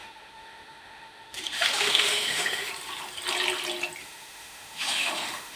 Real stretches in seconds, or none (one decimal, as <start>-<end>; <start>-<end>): 2.7-4.0